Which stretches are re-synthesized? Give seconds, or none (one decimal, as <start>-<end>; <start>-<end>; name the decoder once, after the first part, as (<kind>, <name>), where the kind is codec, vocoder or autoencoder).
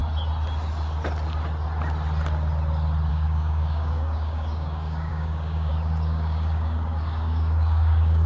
3.1-8.3 (codec, DAC)